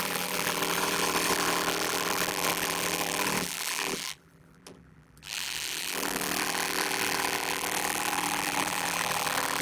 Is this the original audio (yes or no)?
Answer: no